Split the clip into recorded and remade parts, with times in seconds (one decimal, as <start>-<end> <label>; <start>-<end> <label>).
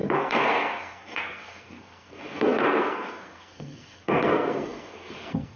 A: 0.0-5.6 remade